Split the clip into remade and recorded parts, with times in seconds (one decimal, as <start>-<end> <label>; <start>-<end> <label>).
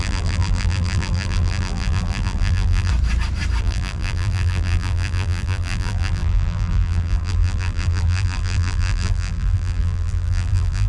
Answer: 0.0-2.9 remade; 2.9-3.6 recorded; 3.6-10.9 remade